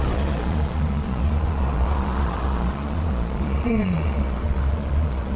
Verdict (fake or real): fake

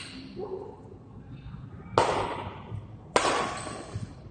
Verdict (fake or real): real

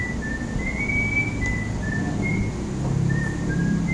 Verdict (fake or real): real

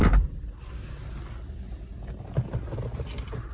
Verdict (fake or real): real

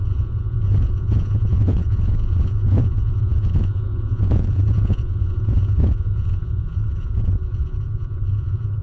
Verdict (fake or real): fake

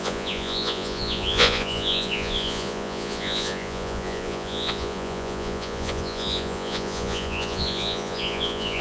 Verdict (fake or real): fake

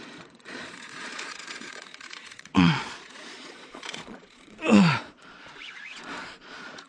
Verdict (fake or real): fake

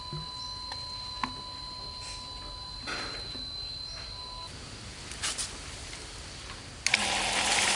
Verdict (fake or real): real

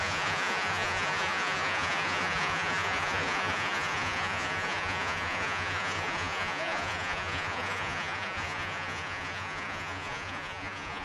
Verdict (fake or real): fake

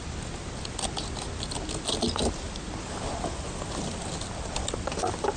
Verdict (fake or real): real